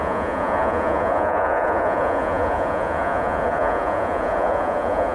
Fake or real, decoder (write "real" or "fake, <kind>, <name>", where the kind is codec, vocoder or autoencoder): fake, vocoder, Vocos